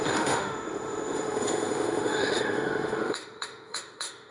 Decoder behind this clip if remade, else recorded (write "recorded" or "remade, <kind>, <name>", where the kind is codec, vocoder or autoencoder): remade, autoencoder, DAC-VAE